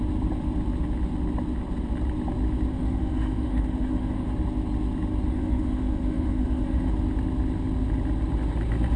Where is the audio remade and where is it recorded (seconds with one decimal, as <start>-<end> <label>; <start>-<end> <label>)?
0.0-2.7 recorded; 2.7-4.3 remade; 4.3-5.3 recorded; 5.3-6.9 remade; 6.9-9.0 recorded

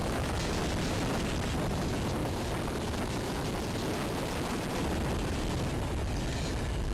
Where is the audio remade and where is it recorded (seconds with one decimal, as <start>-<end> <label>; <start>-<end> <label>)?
0.0-0.6 remade; 0.6-6.9 recorded

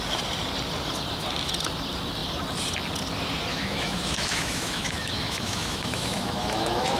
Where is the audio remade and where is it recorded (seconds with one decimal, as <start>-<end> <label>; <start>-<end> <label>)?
0.0-3.5 recorded; 3.5-7.0 remade

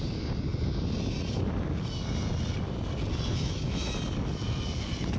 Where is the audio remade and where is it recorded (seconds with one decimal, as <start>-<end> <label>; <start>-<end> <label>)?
0.0-3.3 recorded; 3.3-3.9 remade; 3.9-5.2 recorded